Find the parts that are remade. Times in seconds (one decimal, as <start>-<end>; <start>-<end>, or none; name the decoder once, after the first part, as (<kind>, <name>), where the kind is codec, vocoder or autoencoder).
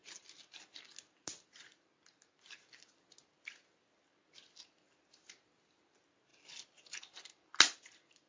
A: none